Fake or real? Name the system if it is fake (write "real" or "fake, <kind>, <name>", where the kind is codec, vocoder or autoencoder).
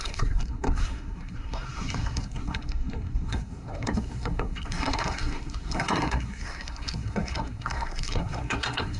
fake, codec, SNAC